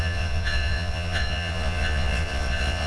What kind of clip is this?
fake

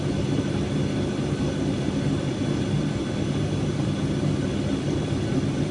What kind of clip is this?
real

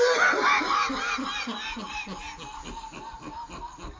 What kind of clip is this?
real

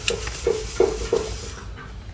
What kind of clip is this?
real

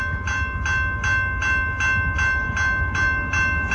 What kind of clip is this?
real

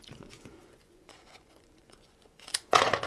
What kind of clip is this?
fake